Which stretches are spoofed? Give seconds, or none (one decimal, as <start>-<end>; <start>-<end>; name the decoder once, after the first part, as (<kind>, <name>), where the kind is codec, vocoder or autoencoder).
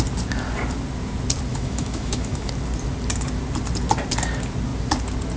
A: 1.5-2.5 (autoencoder, DAC-VAE)